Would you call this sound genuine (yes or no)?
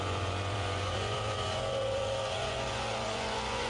no